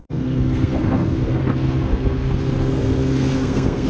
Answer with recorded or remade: remade